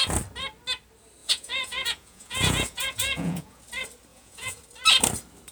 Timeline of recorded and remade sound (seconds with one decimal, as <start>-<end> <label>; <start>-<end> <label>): 0.0-1.2 recorded; 1.2-3.6 remade; 3.6-4.1 recorded; 4.1-4.6 remade; 4.6-5.5 recorded